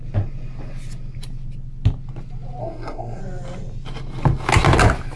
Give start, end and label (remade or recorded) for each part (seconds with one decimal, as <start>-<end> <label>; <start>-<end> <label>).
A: 0.0-2.6 recorded; 2.6-3.2 remade; 3.2-5.2 recorded